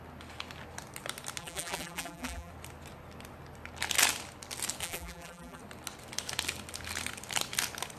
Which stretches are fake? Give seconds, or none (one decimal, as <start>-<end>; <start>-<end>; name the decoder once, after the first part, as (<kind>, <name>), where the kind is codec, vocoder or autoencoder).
1.4-2.5 (vocoder, BigVGAN v2); 4.8-5.6